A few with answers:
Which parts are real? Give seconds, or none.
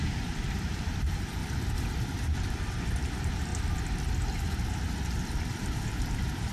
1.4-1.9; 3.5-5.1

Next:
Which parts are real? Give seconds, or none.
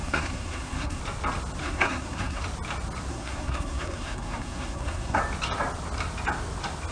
1.0-1.6; 2.4-3.1; 5.2-6.9